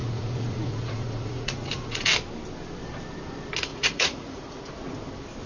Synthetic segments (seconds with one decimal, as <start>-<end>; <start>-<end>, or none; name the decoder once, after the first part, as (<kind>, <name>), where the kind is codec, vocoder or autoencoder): 0.0-2.1 (vocoder, Vocos); 3.7-4.7